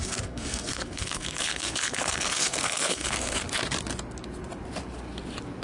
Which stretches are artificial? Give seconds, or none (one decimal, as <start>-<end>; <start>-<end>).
0.0-3.4